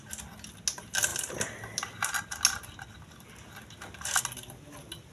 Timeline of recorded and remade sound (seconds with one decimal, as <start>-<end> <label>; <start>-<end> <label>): 0.0-5.1 recorded